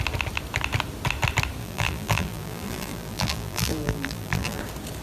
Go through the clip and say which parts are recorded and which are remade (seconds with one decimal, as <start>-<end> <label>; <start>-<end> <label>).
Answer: 0.0-1.6 recorded; 1.6-4.6 remade; 4.6-5.0 recorded